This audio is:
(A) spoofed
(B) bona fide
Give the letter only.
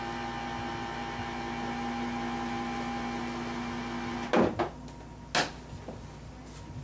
B